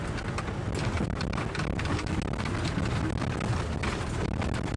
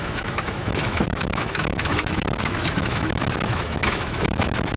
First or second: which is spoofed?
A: second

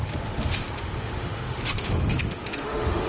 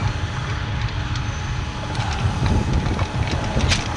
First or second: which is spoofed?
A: first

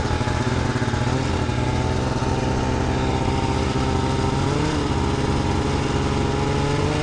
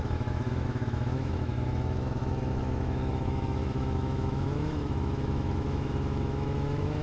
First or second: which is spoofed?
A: second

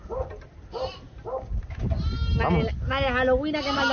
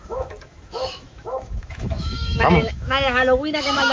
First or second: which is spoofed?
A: second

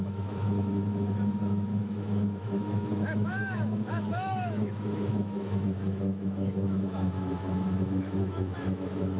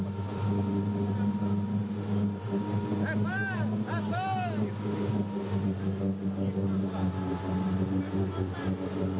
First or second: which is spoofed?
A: first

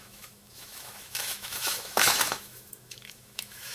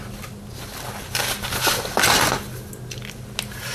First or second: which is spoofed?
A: first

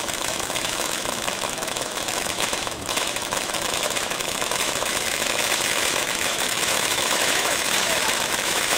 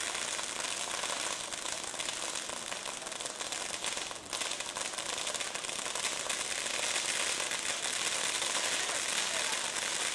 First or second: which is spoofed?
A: first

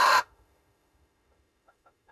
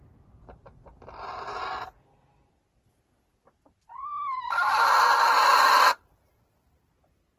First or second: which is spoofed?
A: first